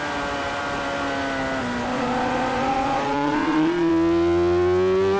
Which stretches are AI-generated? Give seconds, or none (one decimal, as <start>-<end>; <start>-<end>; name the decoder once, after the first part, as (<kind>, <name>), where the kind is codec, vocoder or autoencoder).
1.9-3.9 (vocoder, Vocos)